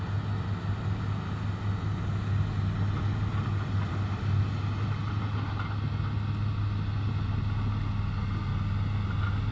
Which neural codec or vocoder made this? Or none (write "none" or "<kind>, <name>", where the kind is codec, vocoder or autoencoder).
none